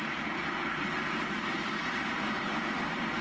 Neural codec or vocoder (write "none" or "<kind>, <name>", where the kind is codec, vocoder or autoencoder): none